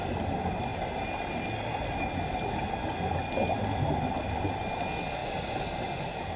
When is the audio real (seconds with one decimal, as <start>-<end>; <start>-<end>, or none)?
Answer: 0.0-6.4